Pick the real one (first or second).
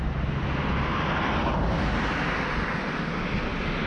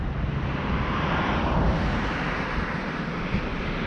first